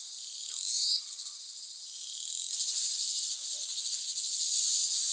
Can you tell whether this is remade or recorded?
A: recorded